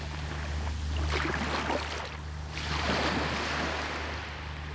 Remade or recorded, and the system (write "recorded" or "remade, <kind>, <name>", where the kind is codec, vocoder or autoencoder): recorded